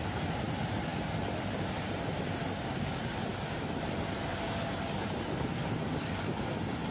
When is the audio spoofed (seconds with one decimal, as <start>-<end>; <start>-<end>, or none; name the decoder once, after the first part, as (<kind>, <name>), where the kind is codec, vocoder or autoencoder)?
none